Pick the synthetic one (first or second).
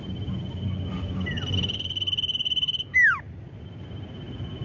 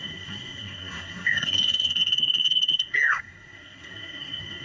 second